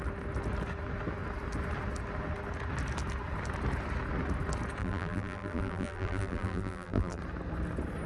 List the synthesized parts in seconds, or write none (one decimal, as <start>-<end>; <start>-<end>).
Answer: 4.8-7.2